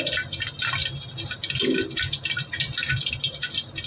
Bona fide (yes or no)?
yes